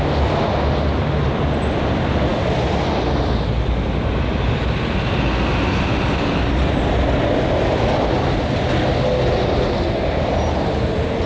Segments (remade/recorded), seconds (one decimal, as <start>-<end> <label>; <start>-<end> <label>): 0.0-11.3 recorded

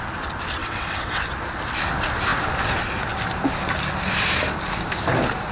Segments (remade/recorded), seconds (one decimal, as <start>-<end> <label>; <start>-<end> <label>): 0.0-0.6 recorded; 0.6-1.2 remade; 1.2-5.5 recorded

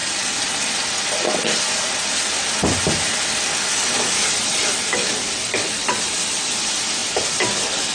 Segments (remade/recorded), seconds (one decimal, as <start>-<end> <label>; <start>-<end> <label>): 0.0-7.9 recorded